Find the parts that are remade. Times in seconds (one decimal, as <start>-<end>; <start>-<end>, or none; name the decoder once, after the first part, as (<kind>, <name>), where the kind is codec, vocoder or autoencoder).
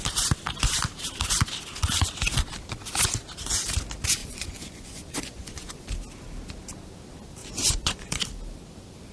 4.2-5.9 (vocoder, Vocos); 7.4-8.2